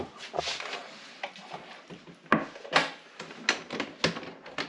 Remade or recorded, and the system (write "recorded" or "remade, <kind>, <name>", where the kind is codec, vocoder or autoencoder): recorded